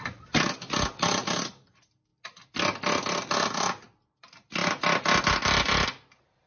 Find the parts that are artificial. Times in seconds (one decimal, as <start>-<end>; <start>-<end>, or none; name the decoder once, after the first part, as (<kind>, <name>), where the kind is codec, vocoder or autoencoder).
none